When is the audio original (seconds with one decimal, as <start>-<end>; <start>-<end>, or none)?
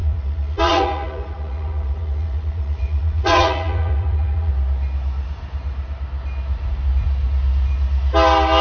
4.5-8.6